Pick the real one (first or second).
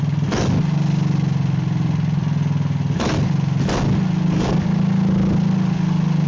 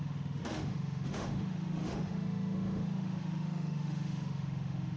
first